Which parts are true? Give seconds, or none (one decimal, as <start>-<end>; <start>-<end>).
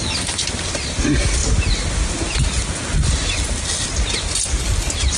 0.0-5.2